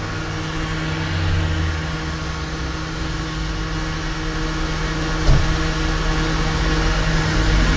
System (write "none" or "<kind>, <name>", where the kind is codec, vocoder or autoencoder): none